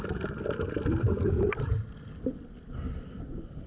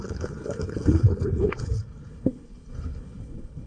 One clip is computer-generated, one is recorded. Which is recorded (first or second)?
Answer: first